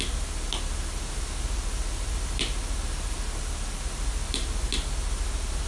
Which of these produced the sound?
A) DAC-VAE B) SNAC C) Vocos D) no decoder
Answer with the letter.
D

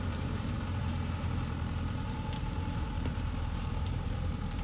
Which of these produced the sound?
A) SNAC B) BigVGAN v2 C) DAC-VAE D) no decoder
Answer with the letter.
B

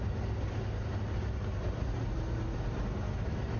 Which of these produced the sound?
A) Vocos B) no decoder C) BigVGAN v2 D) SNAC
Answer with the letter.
B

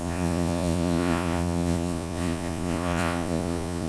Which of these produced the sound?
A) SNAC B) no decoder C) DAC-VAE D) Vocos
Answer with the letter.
D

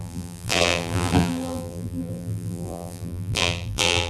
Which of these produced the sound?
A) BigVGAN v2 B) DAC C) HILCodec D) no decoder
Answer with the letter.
A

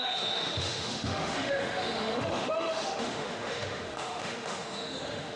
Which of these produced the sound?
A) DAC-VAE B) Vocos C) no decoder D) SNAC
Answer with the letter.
A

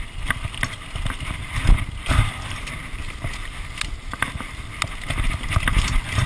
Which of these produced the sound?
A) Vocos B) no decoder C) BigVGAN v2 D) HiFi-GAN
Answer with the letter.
B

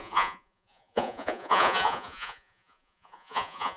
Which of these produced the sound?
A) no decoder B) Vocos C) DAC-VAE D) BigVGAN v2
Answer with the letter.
B